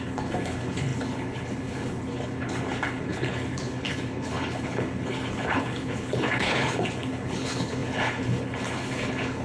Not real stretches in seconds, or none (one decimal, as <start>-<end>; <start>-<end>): 0.0-9.4